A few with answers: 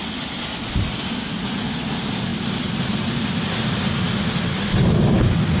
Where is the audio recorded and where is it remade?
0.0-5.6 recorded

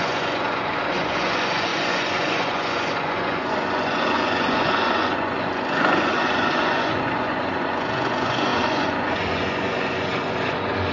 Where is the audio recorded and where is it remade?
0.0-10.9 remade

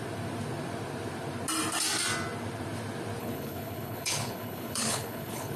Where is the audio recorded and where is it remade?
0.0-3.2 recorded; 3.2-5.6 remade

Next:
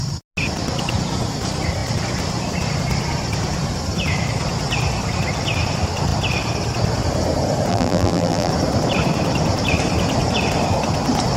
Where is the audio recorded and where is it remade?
0.0-7.7 recorded; 7.7-8.5 remade; 8.5-11.4 recorded

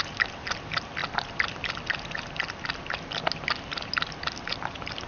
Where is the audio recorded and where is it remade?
0.0-5.1 recorded

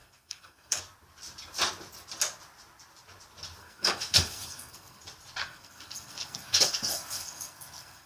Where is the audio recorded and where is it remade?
0.0-0.8 remade; 0.8-3.6 recorded; 3.6-5.0 remade; 5.0-5.4 recorded; 5.4-8.1 remade